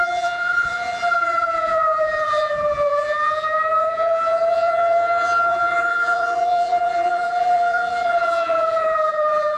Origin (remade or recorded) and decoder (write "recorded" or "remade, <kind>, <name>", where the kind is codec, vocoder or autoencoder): remade, vocoder, BigVGAN v2